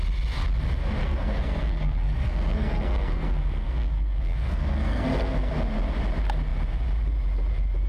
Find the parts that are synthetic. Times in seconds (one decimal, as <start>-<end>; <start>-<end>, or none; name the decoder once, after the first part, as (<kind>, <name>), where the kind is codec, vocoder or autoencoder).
1.0-5.5 (codec, SNAC)